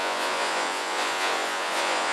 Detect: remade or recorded remade